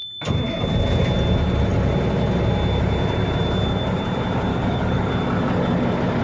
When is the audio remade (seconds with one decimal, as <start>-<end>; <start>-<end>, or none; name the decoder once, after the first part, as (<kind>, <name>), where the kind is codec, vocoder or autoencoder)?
4.5-5.1 (codec, DAC)